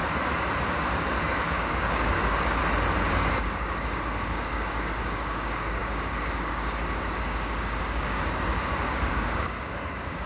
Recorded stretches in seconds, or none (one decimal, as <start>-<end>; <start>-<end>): 0.0-0.6; 2.6-3.1